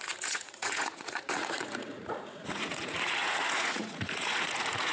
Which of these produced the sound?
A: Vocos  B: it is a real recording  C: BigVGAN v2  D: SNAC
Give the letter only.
A